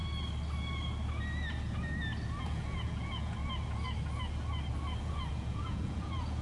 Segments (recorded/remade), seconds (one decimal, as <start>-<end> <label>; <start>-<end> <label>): 0.0-2.4 recorded; 2.4-3.4 remade; 3.4-5.0 recorded; 5.0-6.4 remade